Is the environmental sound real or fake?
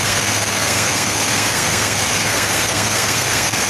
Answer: fake